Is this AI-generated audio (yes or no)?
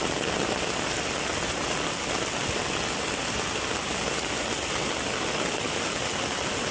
no